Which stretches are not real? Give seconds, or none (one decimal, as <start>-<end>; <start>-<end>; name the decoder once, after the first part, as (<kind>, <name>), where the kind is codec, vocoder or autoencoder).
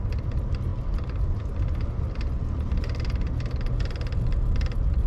none